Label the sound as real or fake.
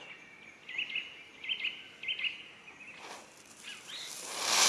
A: real